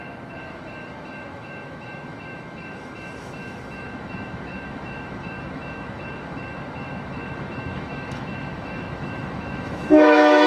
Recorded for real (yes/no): no